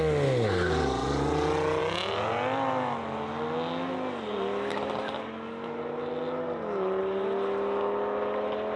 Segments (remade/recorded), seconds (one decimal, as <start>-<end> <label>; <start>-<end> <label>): 0.0-8.8 recorded